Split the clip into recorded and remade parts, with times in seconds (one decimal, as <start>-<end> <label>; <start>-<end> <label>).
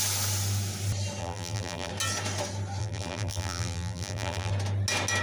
0.0-1.2 recorded; 1.2-1.9 remade; 1.9-2.8 recorded; 2.8-4.5 remade; 4.5-5.2 recorded